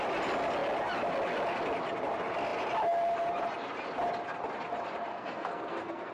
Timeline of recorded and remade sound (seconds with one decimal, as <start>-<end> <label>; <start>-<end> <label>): 0.0-5.1 recorded; 5.1-6.1 remade